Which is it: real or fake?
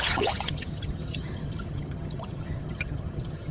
fake